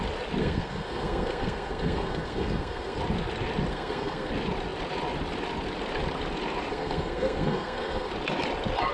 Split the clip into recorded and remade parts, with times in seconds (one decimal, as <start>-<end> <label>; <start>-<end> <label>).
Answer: 0.0-0.4 recorded; 0.4-3.0 remade; 3.0-3.7 recorded; 3.7-4.3 remade; 4.3-6.7 recorded; 6.7-8.1 remade; 8.1-8.9 recorded